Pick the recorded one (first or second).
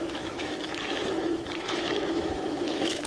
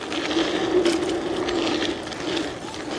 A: second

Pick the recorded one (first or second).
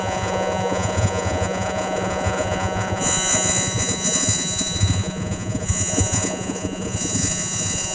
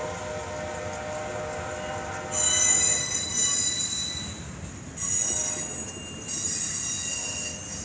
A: second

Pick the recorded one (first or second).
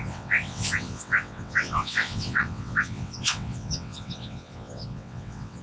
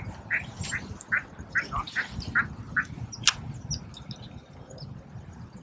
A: second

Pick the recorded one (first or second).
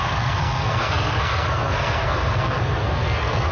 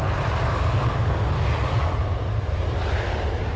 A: second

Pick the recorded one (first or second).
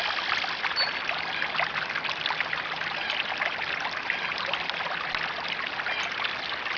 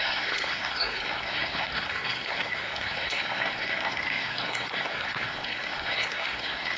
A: first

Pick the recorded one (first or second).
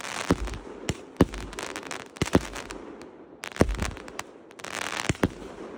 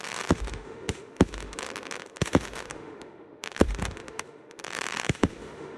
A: first